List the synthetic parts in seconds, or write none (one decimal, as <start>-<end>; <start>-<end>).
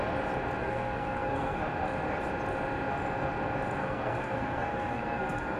0.6-1.6; 3.8-5.6